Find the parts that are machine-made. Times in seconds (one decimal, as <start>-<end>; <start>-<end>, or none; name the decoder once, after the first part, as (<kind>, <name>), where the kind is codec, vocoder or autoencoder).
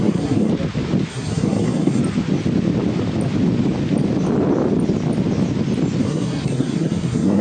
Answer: 0.0-0.5 (codec, SNAC); 1.1-2.0; 6.0-7.4